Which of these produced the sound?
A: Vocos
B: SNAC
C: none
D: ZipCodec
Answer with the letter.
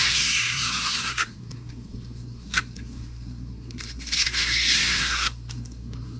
B